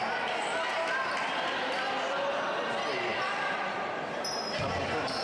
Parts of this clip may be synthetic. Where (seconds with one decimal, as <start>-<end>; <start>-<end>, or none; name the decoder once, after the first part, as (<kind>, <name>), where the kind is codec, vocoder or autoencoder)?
0.7-2.7 (vocoder, BigVGAN v2); 3.1-4.7